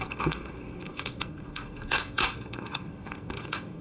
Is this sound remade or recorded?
remade